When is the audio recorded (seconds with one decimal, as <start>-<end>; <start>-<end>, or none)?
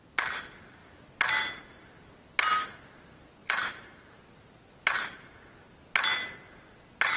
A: 0.0-3.4; 4.2-7.2